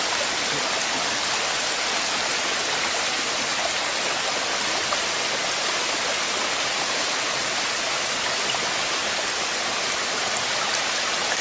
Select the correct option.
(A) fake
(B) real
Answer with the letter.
B